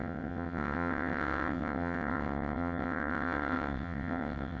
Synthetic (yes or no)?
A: yes